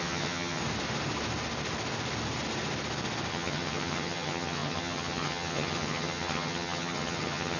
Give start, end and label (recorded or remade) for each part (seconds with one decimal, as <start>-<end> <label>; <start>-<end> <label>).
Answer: 0.0-0.6 remade; 0.6-3.3 recorded; 3.3-7.6 remade